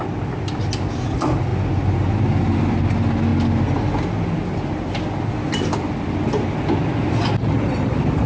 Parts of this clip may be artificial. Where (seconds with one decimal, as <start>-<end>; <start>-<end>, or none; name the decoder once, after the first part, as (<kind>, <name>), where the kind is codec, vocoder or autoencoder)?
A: none